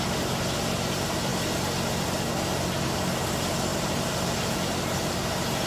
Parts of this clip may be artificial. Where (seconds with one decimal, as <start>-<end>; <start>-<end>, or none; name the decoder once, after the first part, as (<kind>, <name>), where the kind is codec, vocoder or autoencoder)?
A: 3.7-4.5 (vocoder, BigVGAN v2)